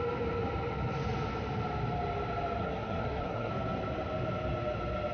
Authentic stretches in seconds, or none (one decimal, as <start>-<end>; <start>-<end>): 0.0-2.6; 3.5-5.1